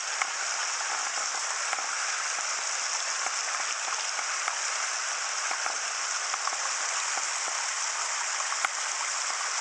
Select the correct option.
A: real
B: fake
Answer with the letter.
A